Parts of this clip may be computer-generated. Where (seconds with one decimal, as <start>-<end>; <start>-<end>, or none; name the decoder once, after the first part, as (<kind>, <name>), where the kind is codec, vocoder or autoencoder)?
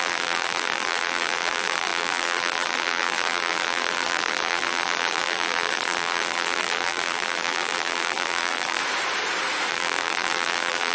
0.0-8.8 (vocoder, BigVGAN v2); 9.7-10.9